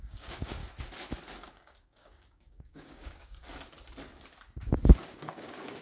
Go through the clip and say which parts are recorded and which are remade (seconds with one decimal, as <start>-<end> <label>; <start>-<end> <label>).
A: 0.0-0.6 remade; 0.6-1.5 recorded; 1.5-3.4 remade; 3.4-5.0 recorded; 5.0-5.8 remade